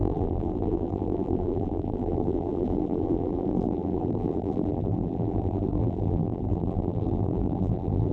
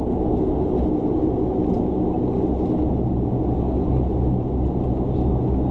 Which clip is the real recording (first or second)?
second